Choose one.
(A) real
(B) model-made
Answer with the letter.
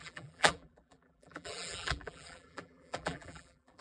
B